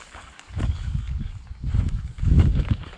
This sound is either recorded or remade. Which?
remade